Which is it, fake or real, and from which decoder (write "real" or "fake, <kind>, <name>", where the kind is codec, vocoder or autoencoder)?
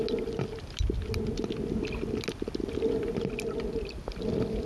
real